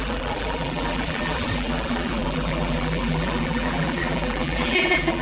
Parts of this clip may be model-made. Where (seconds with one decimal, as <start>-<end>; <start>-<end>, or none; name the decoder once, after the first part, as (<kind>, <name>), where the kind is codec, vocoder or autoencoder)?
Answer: 0.0-5.2 (vocoder, BigVGAN v2)